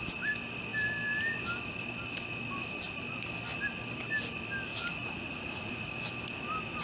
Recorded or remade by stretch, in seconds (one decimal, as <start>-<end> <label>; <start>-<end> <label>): 0.0-4.7 recorded; 4.7-5.9 remade; 5.9-6.8 recorded